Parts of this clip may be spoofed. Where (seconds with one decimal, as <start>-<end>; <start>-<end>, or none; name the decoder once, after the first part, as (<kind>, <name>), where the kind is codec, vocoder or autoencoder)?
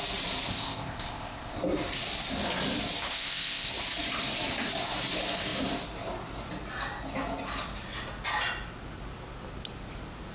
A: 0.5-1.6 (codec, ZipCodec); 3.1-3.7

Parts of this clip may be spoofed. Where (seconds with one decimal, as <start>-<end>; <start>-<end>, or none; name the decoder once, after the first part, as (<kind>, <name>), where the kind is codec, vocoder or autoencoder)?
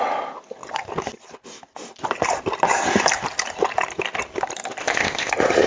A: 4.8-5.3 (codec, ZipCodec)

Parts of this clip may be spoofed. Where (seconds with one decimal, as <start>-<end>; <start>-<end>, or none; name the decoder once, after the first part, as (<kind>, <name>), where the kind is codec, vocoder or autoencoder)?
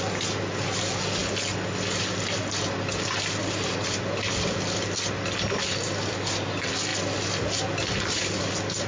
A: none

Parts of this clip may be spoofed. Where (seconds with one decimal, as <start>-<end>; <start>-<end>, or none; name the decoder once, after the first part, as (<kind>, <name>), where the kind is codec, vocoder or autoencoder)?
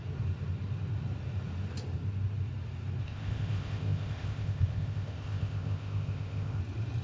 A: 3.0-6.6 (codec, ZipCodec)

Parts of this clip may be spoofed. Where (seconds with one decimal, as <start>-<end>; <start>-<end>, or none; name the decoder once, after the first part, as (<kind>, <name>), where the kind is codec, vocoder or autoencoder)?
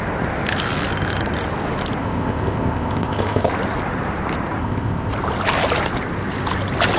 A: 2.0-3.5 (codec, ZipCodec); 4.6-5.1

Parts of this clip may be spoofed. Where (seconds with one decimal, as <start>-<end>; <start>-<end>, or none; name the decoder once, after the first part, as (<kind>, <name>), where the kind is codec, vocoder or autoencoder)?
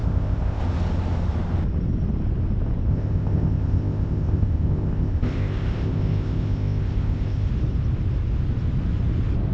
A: 0.0-0.6 (codec, ZipCodec); 2.9-7.5